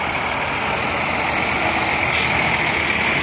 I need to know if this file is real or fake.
real